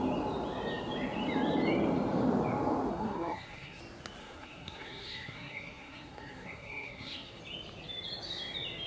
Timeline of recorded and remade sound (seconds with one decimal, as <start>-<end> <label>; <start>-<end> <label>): 0.0-2.9 recorded; 2.9-3.8 remade; 3.8-4.2 recorded; 4.2-7.4 remade; 7.4-8.9 recorded